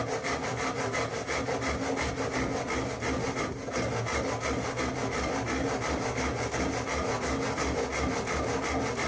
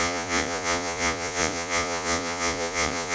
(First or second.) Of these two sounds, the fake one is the second